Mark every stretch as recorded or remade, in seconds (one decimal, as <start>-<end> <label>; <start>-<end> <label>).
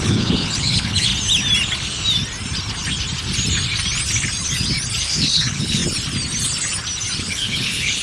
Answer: 0.0-1.1 remade; 1.1-5.0 recorded; 5.0-5.8 remade; 5.8-7.2 recorded; 7.2-8.0 remade